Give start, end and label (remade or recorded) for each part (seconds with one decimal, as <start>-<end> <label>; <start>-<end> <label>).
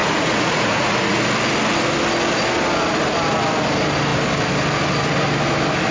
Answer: 0.0-1.2 remade; 1.2-5.9 recorded